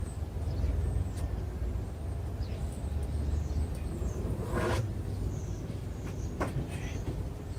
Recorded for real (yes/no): yes